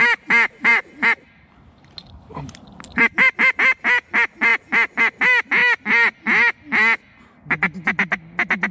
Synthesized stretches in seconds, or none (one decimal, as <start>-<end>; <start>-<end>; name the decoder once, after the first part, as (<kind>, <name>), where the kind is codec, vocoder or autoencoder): none